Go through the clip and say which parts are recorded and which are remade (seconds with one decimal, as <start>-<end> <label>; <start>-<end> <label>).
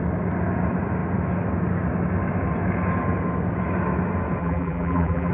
0.0-4.4 recorded; 4.4-5.3 remade